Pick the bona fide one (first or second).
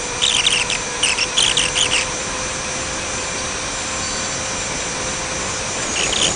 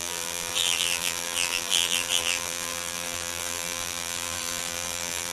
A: first